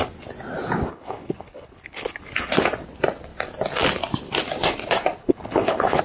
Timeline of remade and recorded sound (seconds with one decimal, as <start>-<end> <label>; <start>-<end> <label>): 0.0-0.9 recorded; 0.9-2.2 remade; 2.2-5.2 recorded; 5.2-6.0 remade